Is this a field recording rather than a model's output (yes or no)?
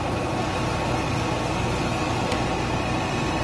yes